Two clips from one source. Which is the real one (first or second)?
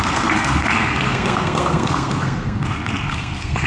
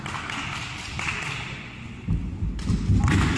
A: second